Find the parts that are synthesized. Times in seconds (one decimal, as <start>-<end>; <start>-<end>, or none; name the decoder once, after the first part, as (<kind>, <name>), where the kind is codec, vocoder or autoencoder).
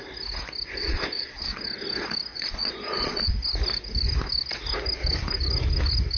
0.8-1.5 (vocoder, Vocos); 2.3-3.3